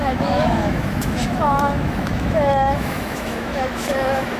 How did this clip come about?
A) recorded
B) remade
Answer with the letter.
B